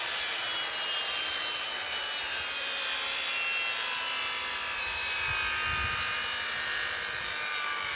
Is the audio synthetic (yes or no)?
no